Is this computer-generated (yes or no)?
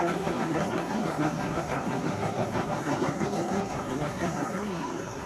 yes